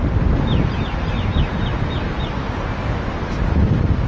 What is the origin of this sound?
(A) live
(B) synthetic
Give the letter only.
A